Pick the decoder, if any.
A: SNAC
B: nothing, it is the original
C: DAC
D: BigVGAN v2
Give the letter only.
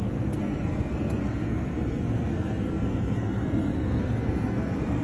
A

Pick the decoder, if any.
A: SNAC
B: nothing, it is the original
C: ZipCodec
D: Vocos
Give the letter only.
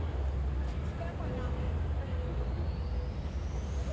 B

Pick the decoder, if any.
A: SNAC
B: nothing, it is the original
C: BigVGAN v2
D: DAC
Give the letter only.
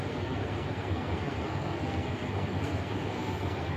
A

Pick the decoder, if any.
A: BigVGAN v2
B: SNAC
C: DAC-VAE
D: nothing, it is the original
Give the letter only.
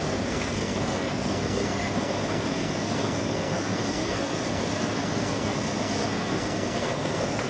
B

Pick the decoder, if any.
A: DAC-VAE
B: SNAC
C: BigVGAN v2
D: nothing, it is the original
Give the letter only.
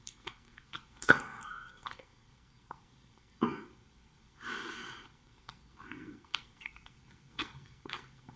B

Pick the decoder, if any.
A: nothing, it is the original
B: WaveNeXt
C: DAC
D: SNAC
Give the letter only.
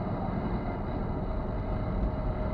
A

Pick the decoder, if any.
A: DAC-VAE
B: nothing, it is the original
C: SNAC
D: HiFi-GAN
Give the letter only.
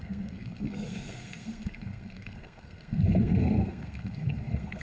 C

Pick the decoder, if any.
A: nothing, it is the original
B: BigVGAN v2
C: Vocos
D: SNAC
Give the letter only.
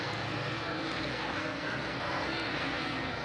D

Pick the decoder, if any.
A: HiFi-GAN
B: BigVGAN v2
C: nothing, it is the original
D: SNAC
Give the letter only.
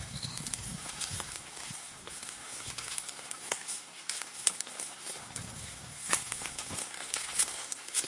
D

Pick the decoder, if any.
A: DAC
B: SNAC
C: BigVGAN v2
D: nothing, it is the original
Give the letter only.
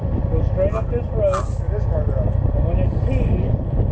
D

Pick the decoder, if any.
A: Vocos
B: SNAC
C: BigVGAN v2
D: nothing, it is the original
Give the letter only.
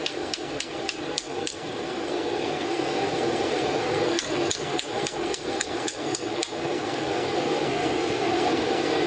B